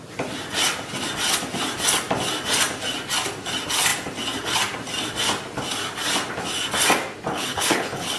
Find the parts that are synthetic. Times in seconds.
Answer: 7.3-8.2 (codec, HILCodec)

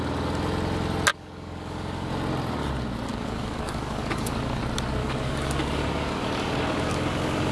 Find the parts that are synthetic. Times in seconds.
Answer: 1.1-2.1 (codec, DAC); 3.1-4.6; 5.0-7.5